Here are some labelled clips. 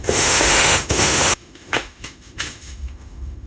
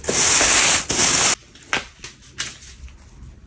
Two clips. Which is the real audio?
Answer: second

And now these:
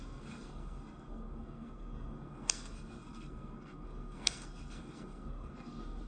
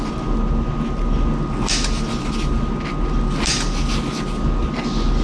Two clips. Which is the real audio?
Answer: second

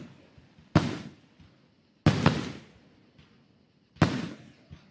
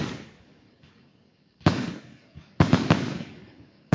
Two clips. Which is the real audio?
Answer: first